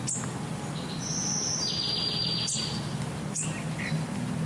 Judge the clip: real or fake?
real